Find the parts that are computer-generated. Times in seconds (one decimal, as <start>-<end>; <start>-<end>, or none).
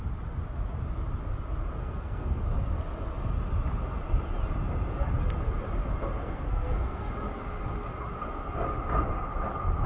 1.8-2.4; 6.2-7.1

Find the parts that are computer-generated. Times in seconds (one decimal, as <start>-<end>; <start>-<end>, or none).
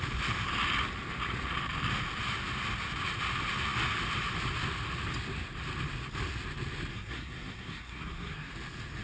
6.9-8.5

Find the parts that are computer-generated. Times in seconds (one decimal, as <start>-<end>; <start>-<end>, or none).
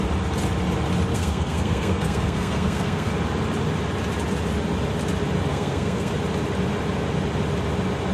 1.1-3.1; 5.5-6.1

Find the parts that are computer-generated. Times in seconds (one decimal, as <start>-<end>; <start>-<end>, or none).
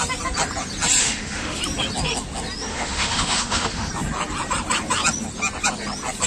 1.0-1.6; 2.7-3.9